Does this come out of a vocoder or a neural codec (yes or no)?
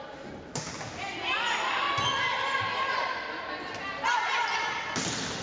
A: no